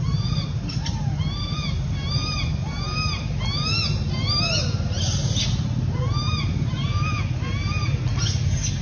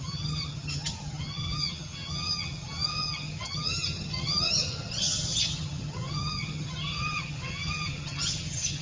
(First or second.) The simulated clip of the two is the second